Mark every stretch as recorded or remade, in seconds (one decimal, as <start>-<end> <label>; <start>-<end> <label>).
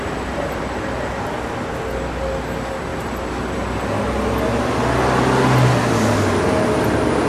0.0-7.3 recorded